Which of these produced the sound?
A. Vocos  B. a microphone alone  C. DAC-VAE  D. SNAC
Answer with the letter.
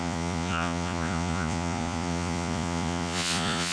A